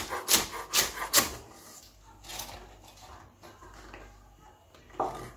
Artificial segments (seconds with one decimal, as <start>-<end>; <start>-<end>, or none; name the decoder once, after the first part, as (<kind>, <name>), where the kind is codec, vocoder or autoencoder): none